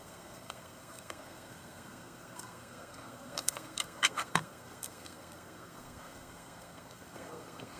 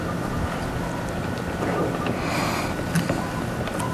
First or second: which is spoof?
first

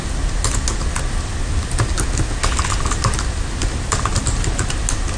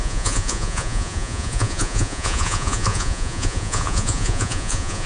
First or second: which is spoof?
second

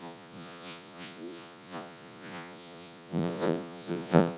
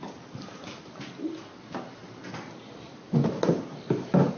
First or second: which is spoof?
first